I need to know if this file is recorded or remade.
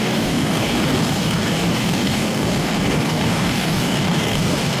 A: remade